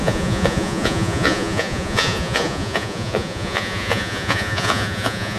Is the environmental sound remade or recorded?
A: remade